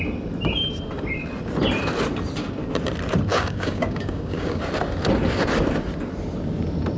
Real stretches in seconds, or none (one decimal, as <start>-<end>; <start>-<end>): 0.0-3.3; 4.6-7.0

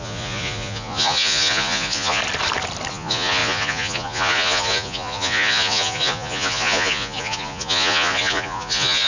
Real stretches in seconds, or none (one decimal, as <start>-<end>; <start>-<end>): 2.2-2.9

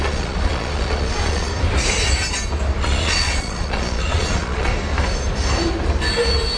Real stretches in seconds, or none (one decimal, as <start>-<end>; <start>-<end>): 1.5-2.8; 4.7-6.6

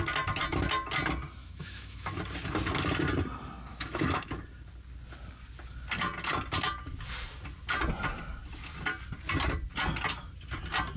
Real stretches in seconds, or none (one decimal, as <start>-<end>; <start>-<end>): 0.0-1.4; 2.2-3.7; 4.3-11.0

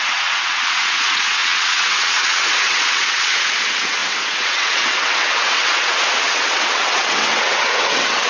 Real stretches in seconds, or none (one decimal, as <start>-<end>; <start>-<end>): none

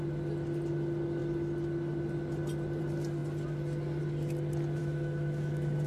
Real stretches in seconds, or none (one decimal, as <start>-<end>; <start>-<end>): 0.0-4.8